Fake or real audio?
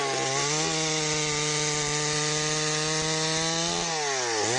real